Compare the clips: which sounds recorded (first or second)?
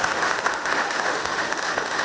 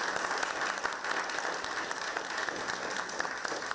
second